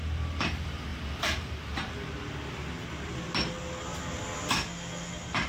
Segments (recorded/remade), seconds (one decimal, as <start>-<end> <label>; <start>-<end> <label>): 0.0-5.5 recorded